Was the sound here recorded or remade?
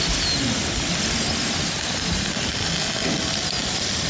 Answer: recorded